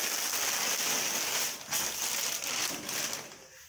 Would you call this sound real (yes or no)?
yes